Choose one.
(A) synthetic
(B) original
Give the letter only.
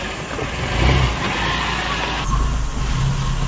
B